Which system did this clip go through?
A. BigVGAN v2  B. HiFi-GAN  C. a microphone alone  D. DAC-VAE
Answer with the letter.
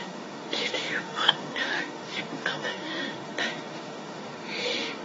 D